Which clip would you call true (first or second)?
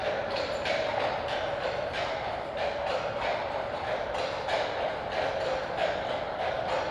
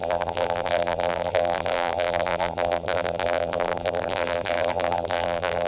first